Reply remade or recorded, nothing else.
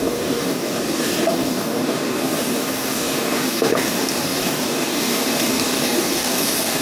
remade